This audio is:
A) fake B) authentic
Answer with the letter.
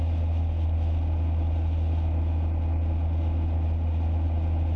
B